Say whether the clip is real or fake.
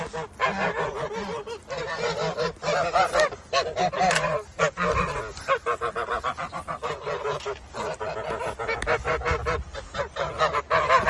real